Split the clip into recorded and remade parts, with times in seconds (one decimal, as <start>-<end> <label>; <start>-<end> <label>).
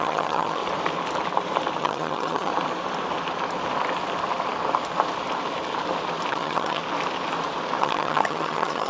0.0-0.6 remade; 0.6-1.8 recorded; 1.8-2.5 remade; 2.5-6.3 recorded; 6.3-6.8 remade; 6.8-7.8 recorded; 7.8-8.9 remade